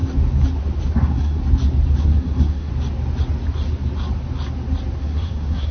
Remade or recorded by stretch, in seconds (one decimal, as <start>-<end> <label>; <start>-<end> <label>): 0.0-1.0 recorded; 1.0-1.4 remade; 1.4-2.0 recorded; 2.0-2.7 remade; 2.7-5.0 recorded; 5.0-5.7 remade